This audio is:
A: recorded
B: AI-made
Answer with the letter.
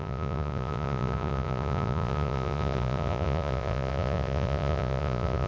B